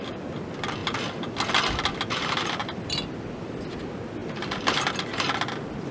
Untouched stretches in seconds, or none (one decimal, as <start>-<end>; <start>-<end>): 0.0-2.6; 3.8-4.2; 4.9-5.9